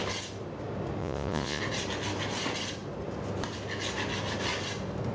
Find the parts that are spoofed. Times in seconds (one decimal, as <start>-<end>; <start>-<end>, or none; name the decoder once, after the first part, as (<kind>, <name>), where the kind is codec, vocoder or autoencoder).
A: 1.0-1.6 (vocoder, Vocos)